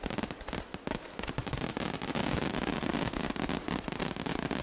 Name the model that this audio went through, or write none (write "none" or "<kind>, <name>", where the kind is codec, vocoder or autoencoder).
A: none